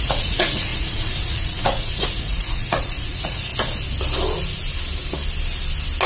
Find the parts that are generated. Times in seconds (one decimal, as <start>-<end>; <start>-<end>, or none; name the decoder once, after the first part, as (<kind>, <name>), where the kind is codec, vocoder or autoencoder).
0.0-3.5 (vocoder, Vocos)